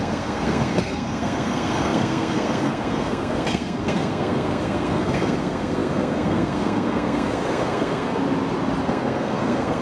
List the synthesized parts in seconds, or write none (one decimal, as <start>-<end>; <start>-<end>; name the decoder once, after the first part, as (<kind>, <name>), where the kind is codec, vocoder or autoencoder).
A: 0.0-8.2 (codec, SNAC); 8.8-9.8